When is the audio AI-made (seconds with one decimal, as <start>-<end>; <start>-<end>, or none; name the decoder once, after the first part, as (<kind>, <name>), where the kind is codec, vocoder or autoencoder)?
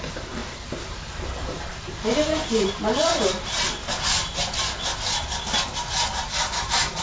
0.0-4.9 (vocoder, BigVGAN v2); 5.9-7.0